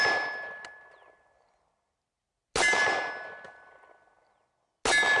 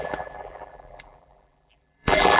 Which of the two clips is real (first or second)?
first